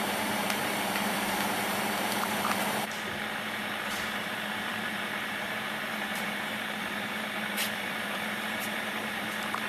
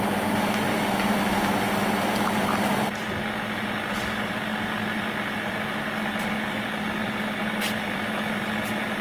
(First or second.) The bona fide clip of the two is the second